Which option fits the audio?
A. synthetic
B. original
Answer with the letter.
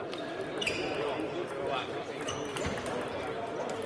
B